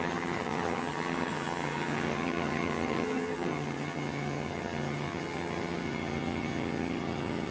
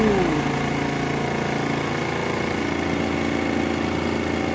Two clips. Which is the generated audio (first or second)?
first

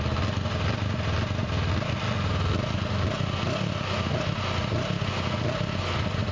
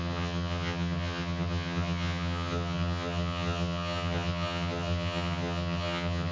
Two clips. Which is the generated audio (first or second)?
second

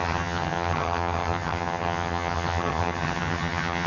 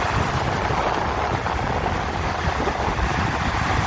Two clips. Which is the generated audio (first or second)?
first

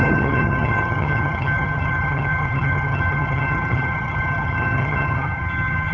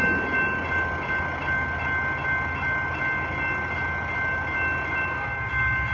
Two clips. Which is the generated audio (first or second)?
first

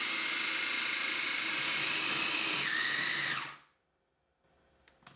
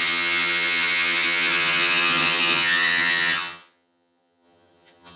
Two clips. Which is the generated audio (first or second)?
second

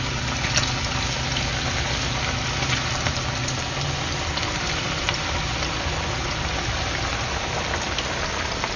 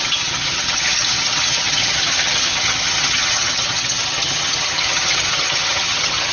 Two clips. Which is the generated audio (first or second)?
second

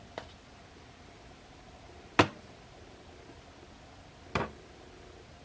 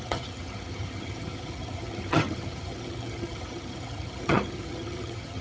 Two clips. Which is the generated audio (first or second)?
second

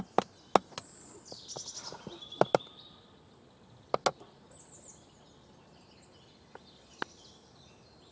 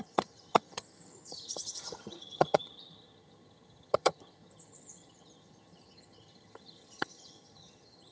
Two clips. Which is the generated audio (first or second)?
second